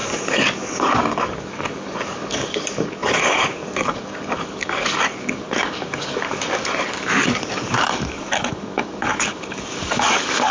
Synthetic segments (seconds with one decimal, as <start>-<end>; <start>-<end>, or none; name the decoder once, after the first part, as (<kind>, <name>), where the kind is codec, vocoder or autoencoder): 0.0-10.5 (codec, DAC)